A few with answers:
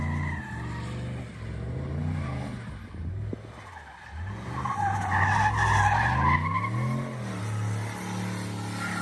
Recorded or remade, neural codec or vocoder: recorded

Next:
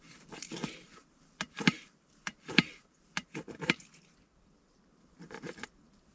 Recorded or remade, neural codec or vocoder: remade, vocoder, BigVGAN v2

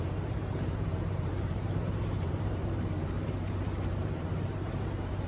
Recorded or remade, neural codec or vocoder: remade, vocoder, BigVGAN v2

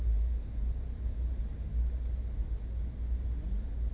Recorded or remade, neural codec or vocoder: recorded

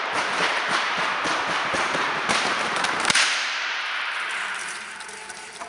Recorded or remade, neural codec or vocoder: remade, vocoder, BigVGAN v2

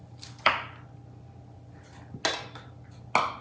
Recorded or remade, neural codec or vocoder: recorded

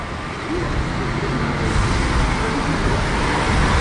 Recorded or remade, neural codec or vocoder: recorded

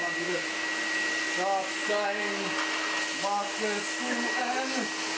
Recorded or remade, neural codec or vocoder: recorded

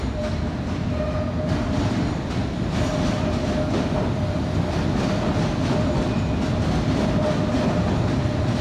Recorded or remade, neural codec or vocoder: recorded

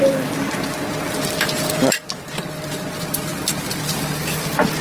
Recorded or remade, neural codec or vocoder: recorded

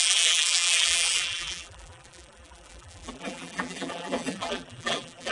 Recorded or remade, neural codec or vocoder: remade, vocoder, BigVGAN v2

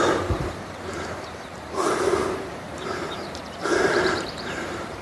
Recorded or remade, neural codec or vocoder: remade, vocoder, BigVGAN v2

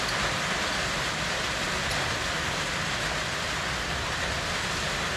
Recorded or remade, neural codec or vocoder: recorded